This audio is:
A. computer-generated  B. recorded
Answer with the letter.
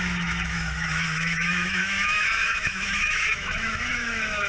A